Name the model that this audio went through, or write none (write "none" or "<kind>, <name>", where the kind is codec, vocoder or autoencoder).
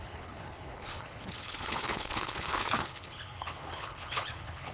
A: codec, HILCodec